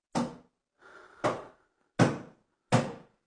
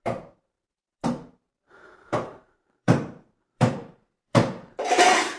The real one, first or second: first